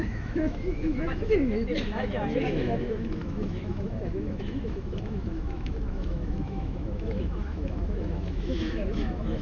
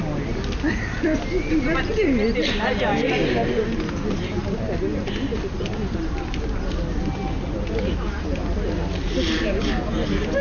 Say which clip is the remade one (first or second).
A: first